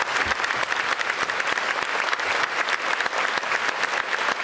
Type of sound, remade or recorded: recorded